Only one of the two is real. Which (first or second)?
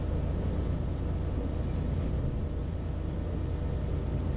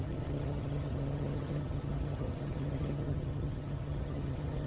first